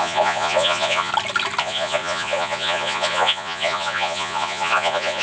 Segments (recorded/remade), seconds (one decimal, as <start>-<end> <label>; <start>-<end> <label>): 0.0-1.1 remade; 1.1-1.6 recorded; 1.6-5.2 remade